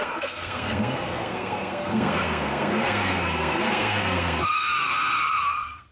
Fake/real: fake